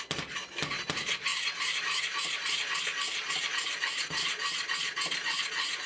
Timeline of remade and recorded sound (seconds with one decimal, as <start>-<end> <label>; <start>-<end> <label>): 0.0-5.9 recorded